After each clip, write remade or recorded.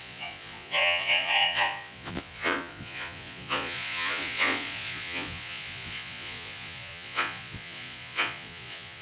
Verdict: remade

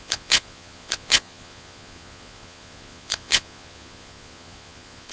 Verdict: remade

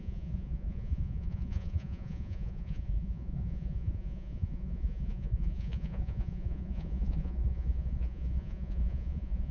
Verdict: remade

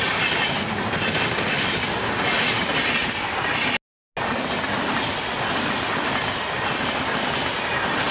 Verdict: recorded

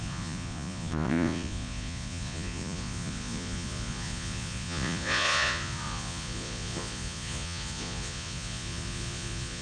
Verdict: remade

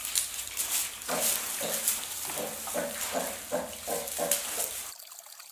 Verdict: recorded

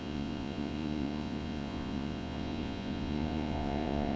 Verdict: remade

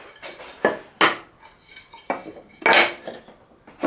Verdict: recorded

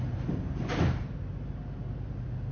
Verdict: recorded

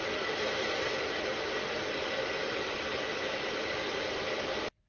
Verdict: recorded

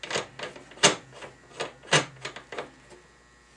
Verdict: recorded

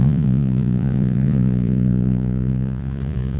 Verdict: remade